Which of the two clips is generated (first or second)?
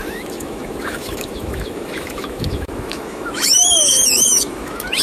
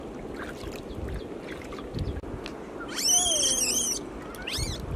first